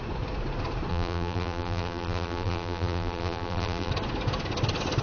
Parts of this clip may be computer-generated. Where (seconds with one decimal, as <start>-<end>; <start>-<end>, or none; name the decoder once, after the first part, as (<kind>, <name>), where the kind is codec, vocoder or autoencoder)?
0.9-3.9 (vocoder, BigVGAN v2)